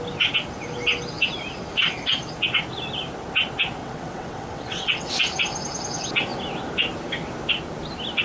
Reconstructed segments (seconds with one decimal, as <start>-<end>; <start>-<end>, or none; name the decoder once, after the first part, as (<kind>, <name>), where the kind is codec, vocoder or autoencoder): 3.8-5.1 (vocoder, WaveNeXt)

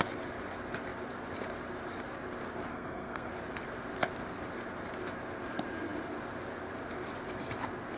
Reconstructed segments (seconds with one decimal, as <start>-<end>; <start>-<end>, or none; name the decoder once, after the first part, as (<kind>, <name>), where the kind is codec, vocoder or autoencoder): 2.7-3.3 (codec, SNAC)

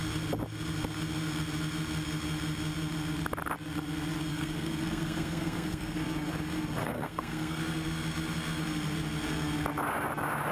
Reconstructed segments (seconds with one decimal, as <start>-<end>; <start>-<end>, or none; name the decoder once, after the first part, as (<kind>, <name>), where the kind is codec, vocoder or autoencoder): 4.3-6.0 (codec, SNAC); 6.8-7.6